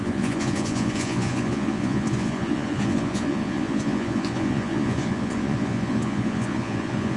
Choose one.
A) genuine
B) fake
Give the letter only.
B